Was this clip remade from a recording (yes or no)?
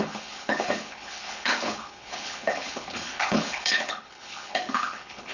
yes